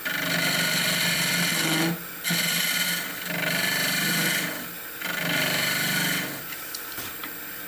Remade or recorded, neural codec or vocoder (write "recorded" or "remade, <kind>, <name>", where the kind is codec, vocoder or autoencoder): recorded